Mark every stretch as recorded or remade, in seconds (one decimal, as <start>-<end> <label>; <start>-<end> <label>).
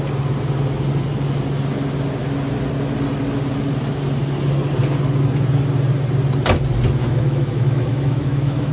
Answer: 0.0-7.0 recorded; 7.0-8.7 remade